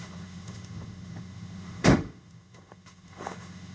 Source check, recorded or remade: remade